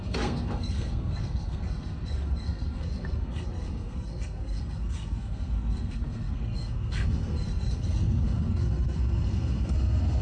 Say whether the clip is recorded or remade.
remade